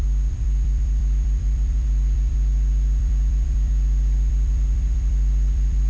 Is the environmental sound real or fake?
fake